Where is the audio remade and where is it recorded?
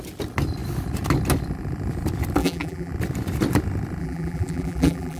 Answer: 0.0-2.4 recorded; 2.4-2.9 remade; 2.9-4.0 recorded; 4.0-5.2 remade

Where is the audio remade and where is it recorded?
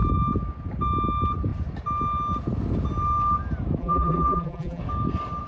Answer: 0.0-3.8 recorded; 3.8-4.8 remade; 4.8-5.5 recorded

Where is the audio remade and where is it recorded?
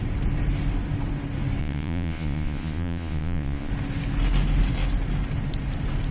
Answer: 0.0-1.6 recorded; 1.6-3.7 remade; 3.7-6.1 recorded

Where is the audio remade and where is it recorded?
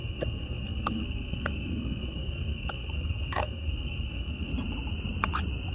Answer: 0.0-4.5 remade; 4.5-5.7 recorded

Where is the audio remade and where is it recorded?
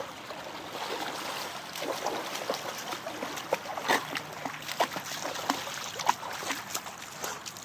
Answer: 0.0-7.6 recorded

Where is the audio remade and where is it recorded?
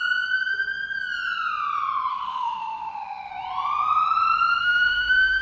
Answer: 0.0-2.1 recorded; 2.1-3.3 remade; 3.3-4.6 recorded; 4.6-5.4 remade